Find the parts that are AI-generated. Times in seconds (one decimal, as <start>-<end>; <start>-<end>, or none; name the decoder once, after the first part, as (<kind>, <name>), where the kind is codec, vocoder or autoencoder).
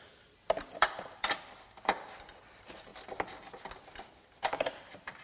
0.0-2.9 (vocoder, BigVGAN v2); 4.2-5.2